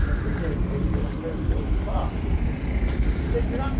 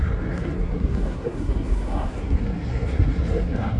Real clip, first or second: first